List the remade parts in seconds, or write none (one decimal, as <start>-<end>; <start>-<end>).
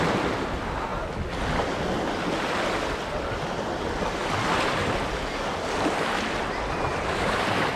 6.9-7.8